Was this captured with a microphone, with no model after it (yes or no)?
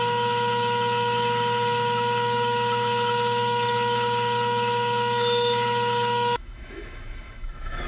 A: no